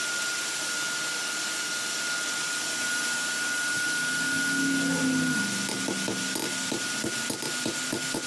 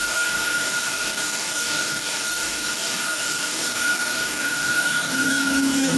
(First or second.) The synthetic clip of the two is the second